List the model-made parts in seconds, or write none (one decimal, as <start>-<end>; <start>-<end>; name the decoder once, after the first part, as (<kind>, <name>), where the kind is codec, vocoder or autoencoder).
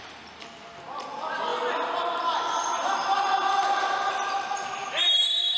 2.7-5.6 (vocoder, BigVGAN v2)